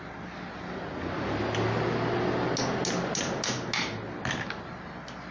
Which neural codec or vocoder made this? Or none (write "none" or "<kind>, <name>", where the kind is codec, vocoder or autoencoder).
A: none